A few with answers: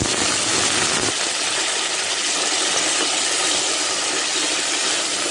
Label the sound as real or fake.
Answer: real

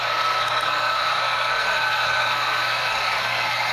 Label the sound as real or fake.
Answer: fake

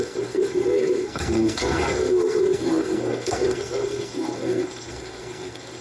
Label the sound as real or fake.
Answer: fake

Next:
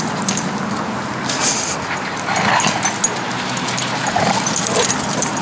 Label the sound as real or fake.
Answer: real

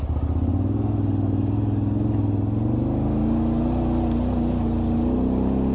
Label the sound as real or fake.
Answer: real